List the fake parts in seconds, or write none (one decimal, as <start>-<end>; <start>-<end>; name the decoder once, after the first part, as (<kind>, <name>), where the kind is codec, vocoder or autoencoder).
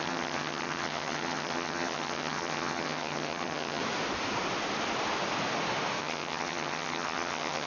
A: 0.0-3.8 (vocoder, HiFi-GAN); 6.0-7.7